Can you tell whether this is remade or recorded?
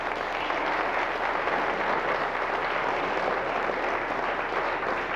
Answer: recorded